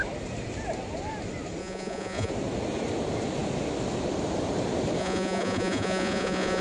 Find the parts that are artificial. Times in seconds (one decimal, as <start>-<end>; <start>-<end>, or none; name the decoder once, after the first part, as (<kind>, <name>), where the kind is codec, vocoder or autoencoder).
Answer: 1.6-2.3 (vocoder, Vocos); 5.0-6.6

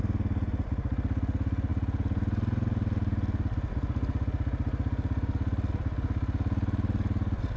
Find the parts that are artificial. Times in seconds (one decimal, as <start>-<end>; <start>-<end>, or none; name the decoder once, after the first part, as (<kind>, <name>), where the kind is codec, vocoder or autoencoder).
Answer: none

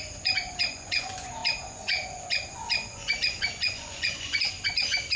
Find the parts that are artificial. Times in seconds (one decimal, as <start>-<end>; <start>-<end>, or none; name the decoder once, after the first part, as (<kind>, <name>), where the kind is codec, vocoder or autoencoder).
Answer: 0.0-5.2 (vocoder, Vocos)

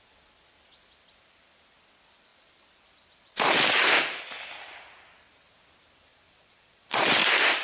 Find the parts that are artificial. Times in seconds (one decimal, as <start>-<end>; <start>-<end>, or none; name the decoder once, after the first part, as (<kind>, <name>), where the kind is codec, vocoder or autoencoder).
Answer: 6.1-7.0 (vocoder, Vocos)

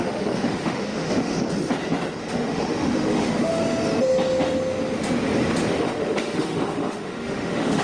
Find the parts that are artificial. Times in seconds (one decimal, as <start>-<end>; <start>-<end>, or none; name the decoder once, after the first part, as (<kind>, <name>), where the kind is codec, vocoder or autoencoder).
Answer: 0.0-1.3 (autoencoder, DAC-VAE); 2.3-3.5; 5.7-7.8

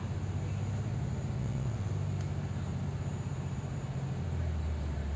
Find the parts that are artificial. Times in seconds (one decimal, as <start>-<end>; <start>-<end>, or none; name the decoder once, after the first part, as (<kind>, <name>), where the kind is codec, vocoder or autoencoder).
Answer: 1.4-1.9 (vocoder, WaveNeXt)

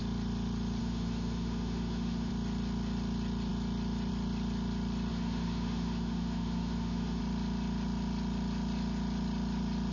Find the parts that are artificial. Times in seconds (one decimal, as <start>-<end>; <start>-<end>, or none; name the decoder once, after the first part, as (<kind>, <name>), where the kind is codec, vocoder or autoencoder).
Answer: 0.8-2.3 (autoencoder, DAC-VAE); 5.1-7.2